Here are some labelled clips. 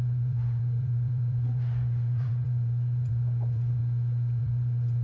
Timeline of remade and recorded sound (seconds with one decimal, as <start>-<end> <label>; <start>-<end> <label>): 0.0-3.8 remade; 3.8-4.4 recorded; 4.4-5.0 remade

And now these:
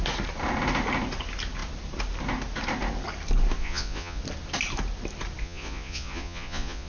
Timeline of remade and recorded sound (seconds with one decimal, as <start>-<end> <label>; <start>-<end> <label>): 0.0-3.6 recorded; 3.6-4.2 remade; 4.2-5.4 recorded; 5.4-6.9 remade

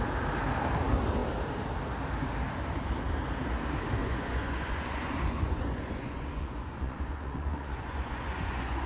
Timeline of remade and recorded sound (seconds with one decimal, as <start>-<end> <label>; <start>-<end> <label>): 0.0-4.0 recorded; 4.0-8.9 remade